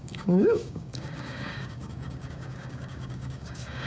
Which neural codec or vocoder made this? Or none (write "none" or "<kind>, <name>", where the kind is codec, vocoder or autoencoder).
codec, DAC